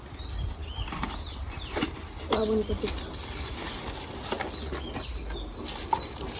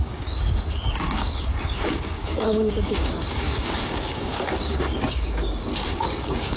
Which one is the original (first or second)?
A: first